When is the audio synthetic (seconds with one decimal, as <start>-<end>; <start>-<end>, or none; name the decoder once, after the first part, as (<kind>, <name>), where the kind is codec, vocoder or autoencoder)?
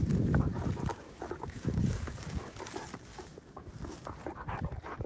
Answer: 0.9-2.1 (autoencoder, DAC-VAE); 3.1-3.7